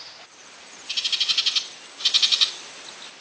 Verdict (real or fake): real